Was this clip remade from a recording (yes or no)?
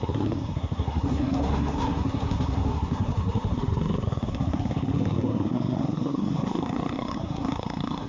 yes